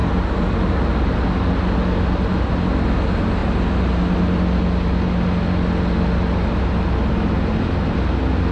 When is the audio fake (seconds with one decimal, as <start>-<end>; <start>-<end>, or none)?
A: none